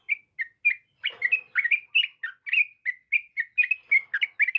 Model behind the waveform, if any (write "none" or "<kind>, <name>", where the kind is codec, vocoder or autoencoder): none